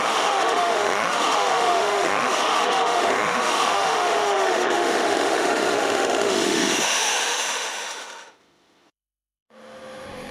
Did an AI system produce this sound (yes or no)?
yes